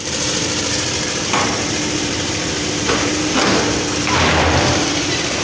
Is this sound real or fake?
fake